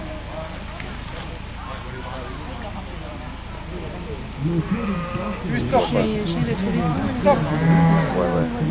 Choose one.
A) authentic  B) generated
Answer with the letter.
A